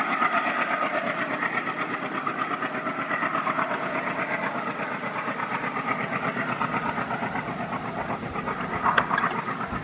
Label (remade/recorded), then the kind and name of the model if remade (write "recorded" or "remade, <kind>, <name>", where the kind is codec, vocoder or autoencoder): recorded